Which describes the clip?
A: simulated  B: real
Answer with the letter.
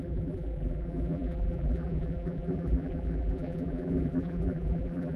A